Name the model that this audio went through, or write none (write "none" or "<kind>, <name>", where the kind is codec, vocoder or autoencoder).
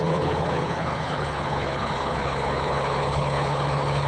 codec, HILCodec